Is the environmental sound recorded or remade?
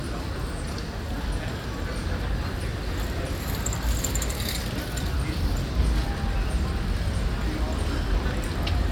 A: recorded